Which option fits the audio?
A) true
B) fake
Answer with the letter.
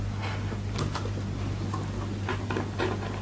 A